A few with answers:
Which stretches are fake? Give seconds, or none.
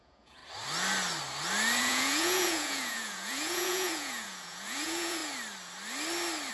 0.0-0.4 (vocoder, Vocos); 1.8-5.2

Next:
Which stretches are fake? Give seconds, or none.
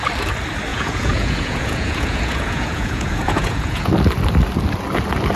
0.7-3.9 (vocoder, Vocos)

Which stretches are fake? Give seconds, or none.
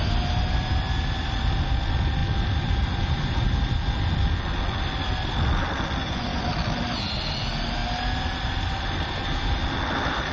6.0-6.5 (vocoder, Vocos)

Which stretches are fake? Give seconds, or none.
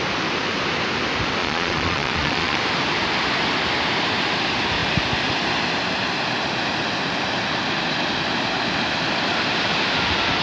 1.4-2.6 (vocoder, Vocos)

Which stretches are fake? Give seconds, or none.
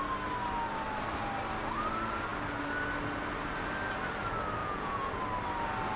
4.6-5.1 (vocoder, Vocos)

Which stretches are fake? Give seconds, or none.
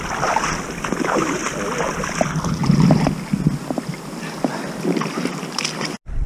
none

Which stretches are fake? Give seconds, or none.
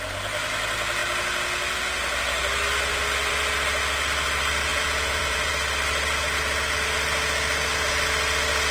4.7-5.5 (vocoder, Vocos)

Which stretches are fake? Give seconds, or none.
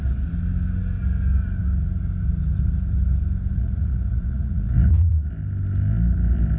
3.5-5.3 (vocoder, Vocos)